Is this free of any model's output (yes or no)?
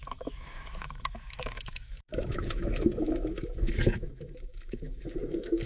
no